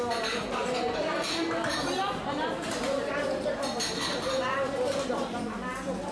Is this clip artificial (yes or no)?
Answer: no